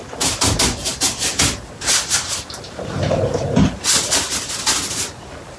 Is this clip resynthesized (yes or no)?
no